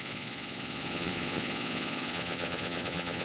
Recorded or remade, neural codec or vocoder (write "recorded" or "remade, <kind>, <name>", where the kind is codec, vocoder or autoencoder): remade, vocoder, Vocos